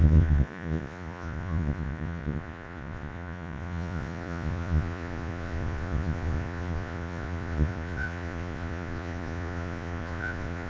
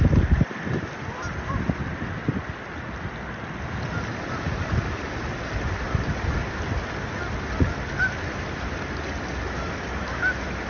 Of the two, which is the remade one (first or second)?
first